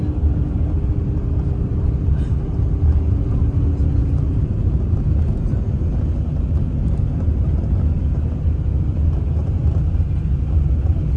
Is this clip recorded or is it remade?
recorded